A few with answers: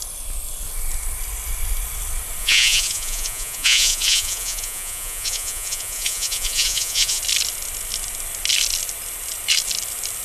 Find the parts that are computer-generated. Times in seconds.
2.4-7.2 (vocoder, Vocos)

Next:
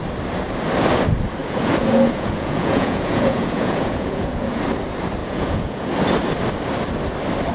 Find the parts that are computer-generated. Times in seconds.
1.4-4.6 (vocoder, Vocos); 5.2-5.9

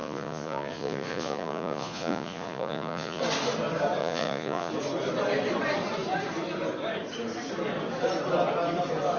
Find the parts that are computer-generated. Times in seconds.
0.0-3.2 (vocoder, Vocos); 4.0-4.7

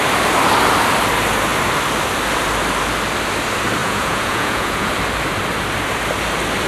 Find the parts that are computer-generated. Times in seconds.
3.8-4.9 (vocoder, Vocos)